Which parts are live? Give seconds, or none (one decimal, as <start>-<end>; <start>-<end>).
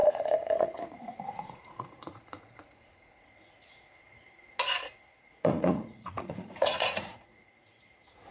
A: none